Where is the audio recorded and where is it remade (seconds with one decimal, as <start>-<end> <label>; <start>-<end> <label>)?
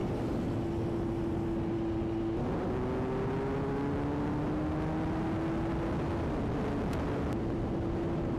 0.0-8.4 recorded